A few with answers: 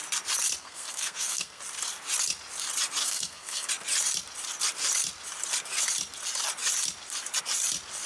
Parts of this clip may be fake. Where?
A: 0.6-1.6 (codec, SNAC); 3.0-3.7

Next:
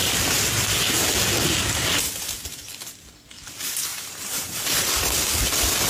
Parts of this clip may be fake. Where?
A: 3.9-4.6 (vocoder, BigVGAN v2)

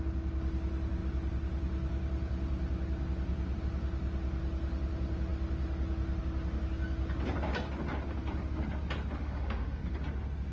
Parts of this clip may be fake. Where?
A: 9.2-9.8 (autoencoder, DAC-VAE)

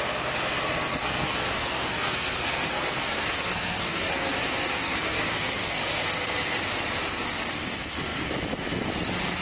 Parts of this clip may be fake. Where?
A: 0.9-6.0 (codec, SNAC)

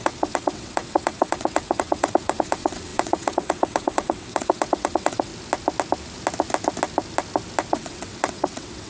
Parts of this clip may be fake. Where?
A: 0.0-5.3 (vocoder, WaveNeXt); 7.7-8.9